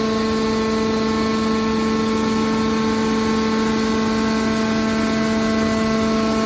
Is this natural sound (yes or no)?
yes